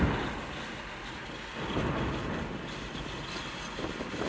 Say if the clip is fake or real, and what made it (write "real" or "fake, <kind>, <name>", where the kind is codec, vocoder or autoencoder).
real